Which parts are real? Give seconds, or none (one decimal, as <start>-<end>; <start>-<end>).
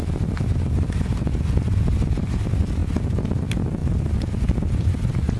0.0-5.4